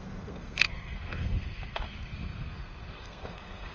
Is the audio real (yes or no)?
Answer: no